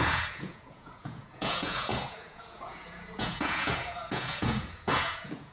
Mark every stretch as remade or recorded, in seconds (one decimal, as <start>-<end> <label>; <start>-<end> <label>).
0.0-5.5 remade